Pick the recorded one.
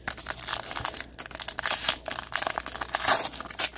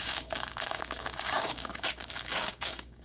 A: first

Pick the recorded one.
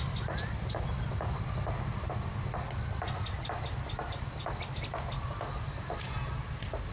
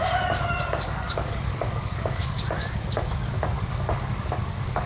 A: first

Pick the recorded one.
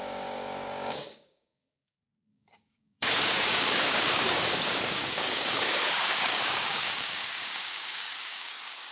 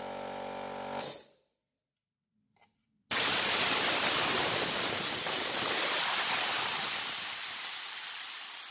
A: second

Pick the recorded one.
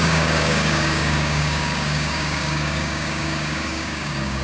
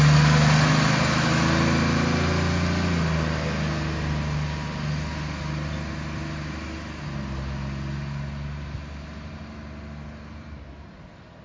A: second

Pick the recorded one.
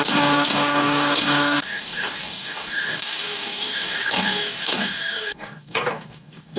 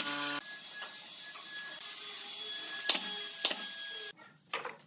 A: second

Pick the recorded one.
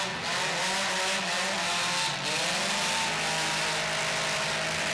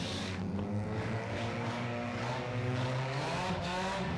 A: first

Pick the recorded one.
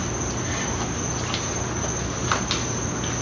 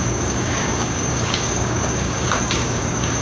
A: first